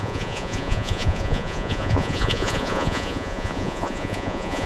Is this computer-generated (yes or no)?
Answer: yes